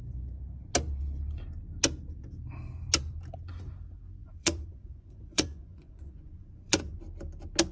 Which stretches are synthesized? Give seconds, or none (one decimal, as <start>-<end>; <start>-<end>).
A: 4.2-7.0